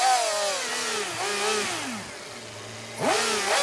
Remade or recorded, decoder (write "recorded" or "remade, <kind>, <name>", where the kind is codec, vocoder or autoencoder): recorded